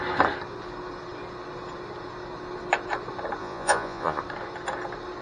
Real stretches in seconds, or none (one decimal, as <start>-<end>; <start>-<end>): 0.0-3.4; 4.2-5.2